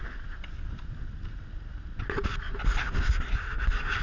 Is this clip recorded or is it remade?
recorded